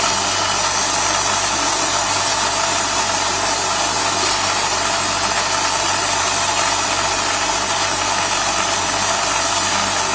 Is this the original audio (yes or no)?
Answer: yes